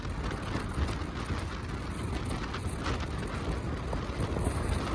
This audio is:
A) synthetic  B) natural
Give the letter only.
B